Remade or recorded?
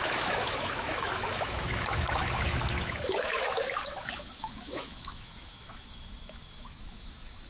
remade